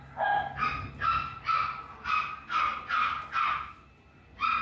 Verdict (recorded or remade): recorded